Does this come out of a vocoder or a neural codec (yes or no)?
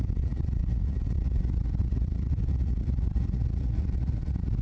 yes